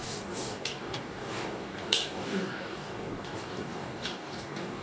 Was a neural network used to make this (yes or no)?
yes